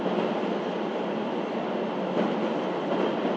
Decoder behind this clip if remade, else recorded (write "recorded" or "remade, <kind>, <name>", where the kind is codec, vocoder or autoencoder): recorded